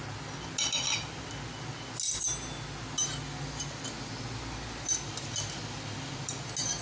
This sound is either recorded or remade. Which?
recorded